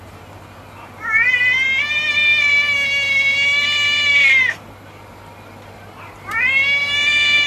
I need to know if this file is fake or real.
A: real